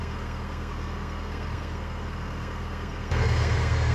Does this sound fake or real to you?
fake